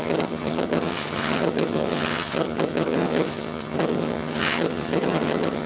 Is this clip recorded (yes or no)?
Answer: no